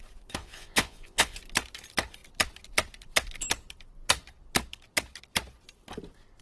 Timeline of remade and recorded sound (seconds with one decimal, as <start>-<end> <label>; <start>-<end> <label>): 0.0-0.4 recorded; 0.4-1.4 remade; 1.4-6.4 recorded